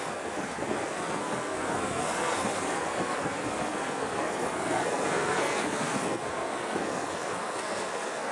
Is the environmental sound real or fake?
fake